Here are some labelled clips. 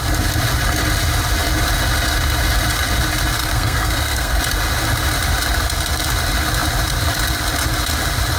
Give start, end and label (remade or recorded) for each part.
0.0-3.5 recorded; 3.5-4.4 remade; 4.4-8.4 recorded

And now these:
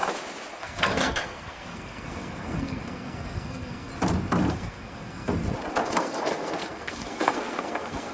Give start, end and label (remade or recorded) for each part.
0.0-0.6 recorded; 0.6-3.9 remade; 3.9-4.5 recorded; 4.5-5.3 remade; 5.3-5.8 recorded; 5.8-8.1 remade

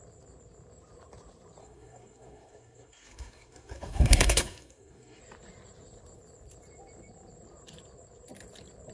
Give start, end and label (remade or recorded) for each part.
0.0-1.6 recorded; 1.6-5.2 remade; 5.2-8.9 recorded

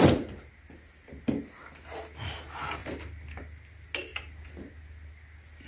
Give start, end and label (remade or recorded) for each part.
0.0-5.7 recorded

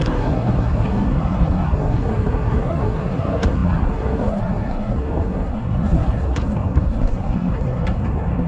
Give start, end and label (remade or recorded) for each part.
0.0-8.5 remade

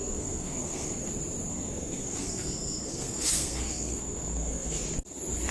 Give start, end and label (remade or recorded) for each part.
0.0-1.1 remade; 1.1-1.5 recorded; 1.5-4.8 remade; 4.8-5.5 recorded